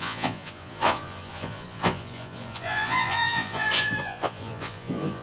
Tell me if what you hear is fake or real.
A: fake